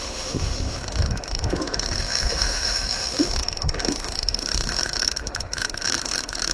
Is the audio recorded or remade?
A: remade